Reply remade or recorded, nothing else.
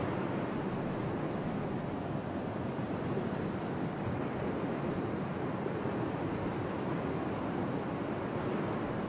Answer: recorded